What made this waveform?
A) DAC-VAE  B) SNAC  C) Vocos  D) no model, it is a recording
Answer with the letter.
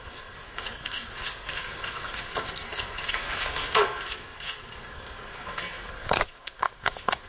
B